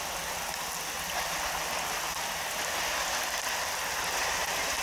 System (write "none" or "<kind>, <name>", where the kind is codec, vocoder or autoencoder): none